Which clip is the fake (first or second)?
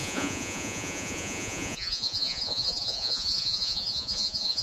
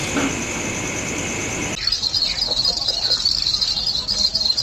first